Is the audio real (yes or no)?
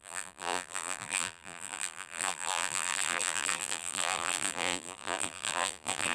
no